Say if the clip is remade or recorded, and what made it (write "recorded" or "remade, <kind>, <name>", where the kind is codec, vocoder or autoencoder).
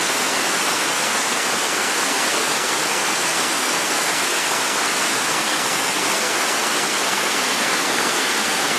remade, codec, SNAC